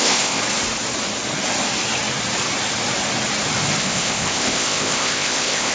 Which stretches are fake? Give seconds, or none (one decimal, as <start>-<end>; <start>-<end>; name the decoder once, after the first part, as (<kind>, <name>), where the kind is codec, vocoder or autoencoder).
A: 0.0-0.4 (codec, ZipCodec); 3.8-5.7